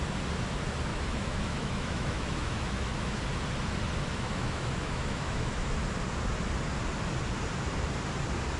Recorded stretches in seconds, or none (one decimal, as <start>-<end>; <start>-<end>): 0.0-0.9; 3.2-4.1; 5.8-8.6